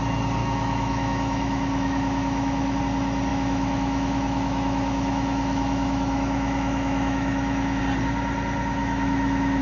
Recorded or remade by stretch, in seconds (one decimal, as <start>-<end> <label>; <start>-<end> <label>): 0.0-0.4 recorded; 0.4-2.8 remade; 2.8-3.3 recorded; 3.3-7.8 remade; 7.8-8.8 recorded; 8.8-9.6 remade